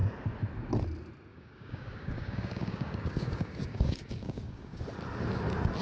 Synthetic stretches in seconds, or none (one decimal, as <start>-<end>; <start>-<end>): 1.3-4.8